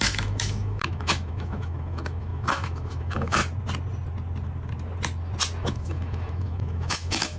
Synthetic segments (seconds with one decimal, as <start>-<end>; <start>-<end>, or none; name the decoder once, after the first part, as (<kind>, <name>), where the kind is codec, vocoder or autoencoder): 0.0-3.4 (autoencoder, DAC-VAE); 5.6-7.4